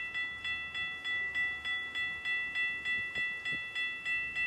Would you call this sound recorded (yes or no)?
yes